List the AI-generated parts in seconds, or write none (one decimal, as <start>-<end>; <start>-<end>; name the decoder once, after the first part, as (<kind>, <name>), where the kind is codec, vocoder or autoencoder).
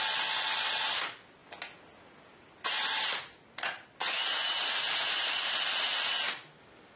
none